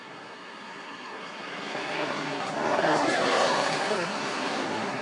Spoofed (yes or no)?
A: yes